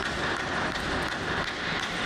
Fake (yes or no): no